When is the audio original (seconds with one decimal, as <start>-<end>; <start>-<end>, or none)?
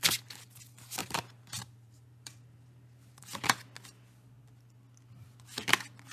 0.0-1.0; 3.4-6.1